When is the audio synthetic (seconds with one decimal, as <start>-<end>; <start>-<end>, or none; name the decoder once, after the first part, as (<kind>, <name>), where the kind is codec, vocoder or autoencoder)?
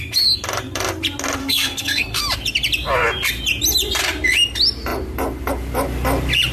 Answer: 1.4-2.2 (codec, SNAC)